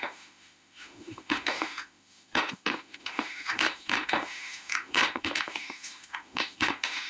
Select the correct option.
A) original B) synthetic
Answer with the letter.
B